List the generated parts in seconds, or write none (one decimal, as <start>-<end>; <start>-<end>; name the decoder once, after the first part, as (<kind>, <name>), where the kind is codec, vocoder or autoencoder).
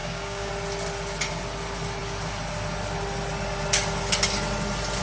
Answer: 0.0-0.5 (codec, DAC)